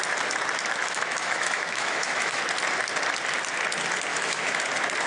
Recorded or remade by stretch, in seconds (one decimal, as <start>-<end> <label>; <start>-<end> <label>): 0.0-0.8 recorded; 0.8-2.4 remade; 2.4-4.1 recorded; 4.1-4.6 remade; 4.6-5.1 recorded